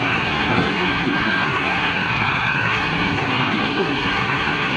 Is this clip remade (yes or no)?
yes